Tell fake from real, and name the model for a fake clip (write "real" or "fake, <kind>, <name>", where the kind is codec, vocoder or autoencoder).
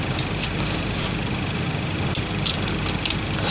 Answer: fake, vocoder, BigVGAN v2